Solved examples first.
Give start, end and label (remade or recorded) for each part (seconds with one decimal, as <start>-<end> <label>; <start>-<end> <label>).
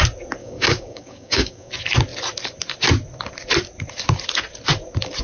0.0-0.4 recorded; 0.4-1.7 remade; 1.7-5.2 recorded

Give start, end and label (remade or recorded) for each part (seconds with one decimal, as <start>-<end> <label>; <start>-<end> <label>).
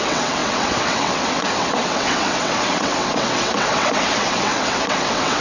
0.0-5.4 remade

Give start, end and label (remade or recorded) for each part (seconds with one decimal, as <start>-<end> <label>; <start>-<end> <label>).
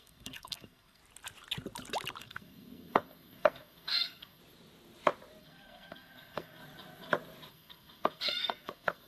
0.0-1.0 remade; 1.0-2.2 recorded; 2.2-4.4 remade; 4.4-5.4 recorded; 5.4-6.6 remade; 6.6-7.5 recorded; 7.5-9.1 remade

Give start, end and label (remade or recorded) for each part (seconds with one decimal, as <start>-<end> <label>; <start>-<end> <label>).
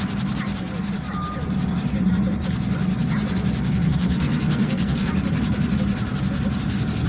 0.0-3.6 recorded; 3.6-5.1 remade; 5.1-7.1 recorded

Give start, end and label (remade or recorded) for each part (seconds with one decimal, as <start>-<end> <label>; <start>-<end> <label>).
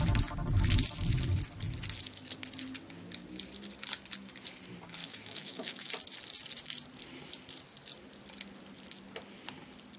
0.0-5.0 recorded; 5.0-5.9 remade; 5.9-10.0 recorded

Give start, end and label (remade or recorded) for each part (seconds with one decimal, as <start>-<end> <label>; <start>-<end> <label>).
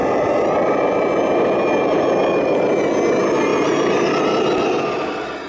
0.0-5.5 recorded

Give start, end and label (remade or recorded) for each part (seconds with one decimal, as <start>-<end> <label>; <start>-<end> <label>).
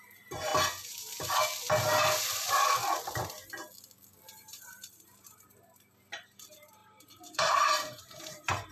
0.0-0.5 remade; 0.5-4.2 recorded; 4.2-8.7 remade